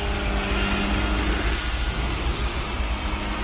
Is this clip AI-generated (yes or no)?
no